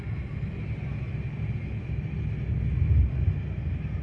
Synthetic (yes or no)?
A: no